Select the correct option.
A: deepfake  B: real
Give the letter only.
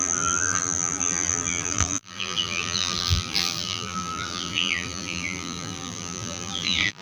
A